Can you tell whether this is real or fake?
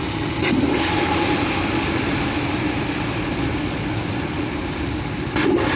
real